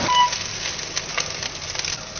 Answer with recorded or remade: recorded